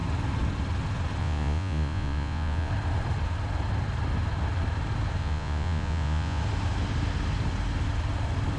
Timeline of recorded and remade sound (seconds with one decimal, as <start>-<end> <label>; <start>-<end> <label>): 0.0-1.2 recorded; 1.2-2.7 remade; 2.7-5.2 recorded; 5.2-6.4 remade; 6.4-8.6 recorded